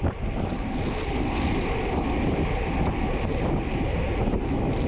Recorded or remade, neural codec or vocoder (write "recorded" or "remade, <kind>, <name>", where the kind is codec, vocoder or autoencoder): recorded